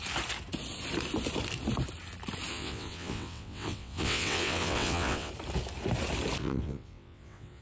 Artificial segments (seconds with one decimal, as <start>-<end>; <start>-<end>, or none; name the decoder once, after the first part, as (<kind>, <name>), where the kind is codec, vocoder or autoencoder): 2.5-5.3 (vocoder, WaveNeXt); 6.4-7.6